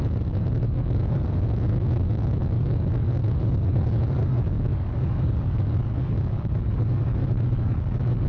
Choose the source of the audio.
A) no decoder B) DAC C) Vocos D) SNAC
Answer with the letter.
B